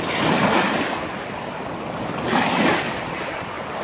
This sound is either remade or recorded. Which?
recorded